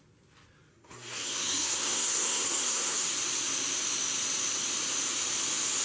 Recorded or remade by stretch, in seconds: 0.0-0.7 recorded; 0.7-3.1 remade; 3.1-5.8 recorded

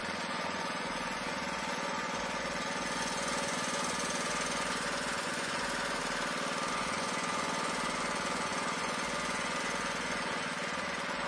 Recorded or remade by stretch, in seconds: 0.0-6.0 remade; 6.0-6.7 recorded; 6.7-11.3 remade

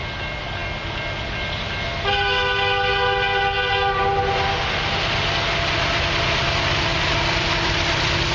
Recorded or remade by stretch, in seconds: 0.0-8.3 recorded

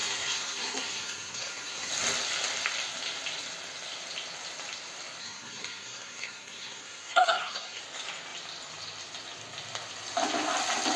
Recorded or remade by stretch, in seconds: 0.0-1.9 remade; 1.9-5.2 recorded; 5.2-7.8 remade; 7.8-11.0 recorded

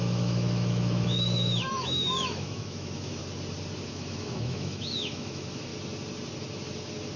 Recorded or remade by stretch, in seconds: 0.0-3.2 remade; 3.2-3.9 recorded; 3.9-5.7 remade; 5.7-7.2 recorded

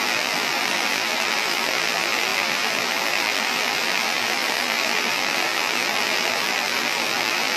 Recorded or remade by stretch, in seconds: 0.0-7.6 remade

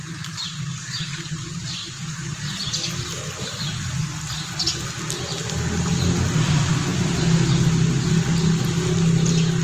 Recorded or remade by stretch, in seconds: 0.0-1.8 recorded; 1.8-2.4 remade; 2.4-9.6 recorded

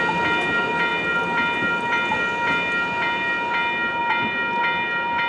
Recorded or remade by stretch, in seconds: 0.0-5.3 recorded